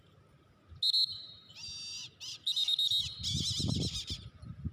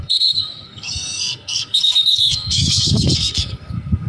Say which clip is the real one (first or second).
first